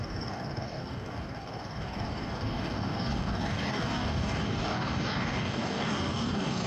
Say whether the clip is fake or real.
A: fake